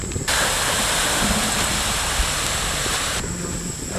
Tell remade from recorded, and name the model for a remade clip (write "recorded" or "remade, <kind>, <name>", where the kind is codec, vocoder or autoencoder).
recorded